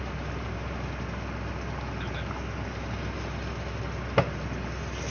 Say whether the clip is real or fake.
real